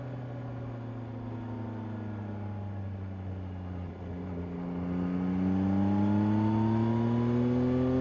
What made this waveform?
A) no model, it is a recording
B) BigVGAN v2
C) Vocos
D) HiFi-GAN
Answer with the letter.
A